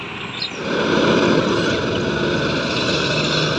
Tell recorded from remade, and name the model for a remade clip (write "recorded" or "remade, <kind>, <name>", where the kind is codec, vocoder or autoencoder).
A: recorded